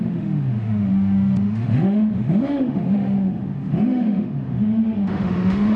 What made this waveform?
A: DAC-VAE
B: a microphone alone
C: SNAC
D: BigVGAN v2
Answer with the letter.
A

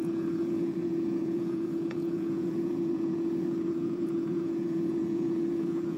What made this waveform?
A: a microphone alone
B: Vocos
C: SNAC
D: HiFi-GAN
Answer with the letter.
B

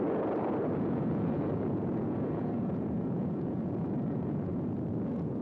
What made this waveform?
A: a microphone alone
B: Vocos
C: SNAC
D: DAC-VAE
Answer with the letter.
B